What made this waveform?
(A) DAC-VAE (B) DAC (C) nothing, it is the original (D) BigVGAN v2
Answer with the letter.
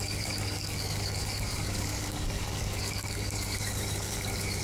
B